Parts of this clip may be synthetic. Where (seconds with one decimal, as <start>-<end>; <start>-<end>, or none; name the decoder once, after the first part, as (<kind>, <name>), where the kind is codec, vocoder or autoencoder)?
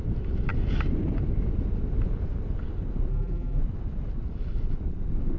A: 3.1-3.6 (vocoder, BigVGAN v2)